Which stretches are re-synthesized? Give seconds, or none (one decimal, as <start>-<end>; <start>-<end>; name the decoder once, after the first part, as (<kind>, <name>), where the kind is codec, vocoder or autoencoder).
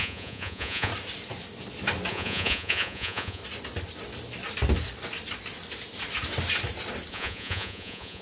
0.0-0.9 (vocoder, Vocos); 2.1-3.4; 7.1-8.2